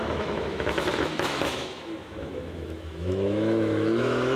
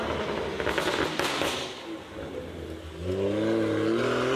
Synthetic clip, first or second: first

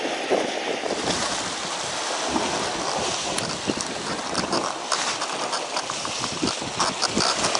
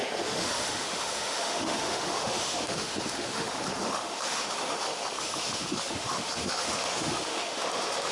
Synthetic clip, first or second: second